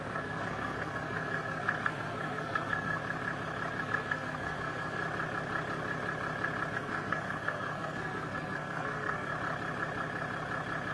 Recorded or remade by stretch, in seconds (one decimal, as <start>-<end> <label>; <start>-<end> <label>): 0.0-3.0 remade; 3.0-3.8 recorded; 3.8-5.0 remade; 5.0-6.7 recorded; 6.7-9.3 remade; 9.3-10.9 recorded